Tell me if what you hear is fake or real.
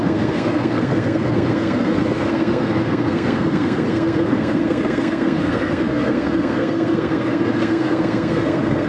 fake